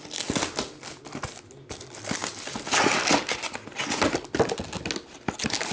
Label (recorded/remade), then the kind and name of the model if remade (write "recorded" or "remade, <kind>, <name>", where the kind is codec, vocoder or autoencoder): recorded